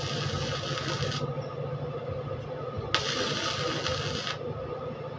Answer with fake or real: real